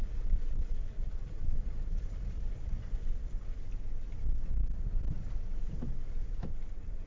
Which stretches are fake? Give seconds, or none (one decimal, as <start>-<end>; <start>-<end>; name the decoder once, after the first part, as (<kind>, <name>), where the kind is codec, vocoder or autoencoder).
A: 0.0-3.3 (vocoder, Vocos)